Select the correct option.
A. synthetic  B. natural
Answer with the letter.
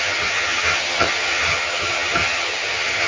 A